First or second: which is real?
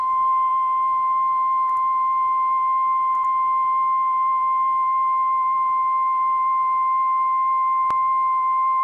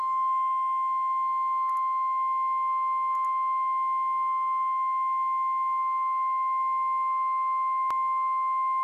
second